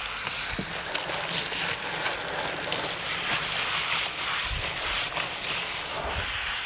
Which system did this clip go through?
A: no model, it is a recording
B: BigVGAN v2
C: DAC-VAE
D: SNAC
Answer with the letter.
A